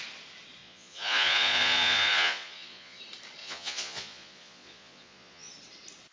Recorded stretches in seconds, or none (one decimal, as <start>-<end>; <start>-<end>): 0.0-0.6; 3.0-3.4; 5.5-6.1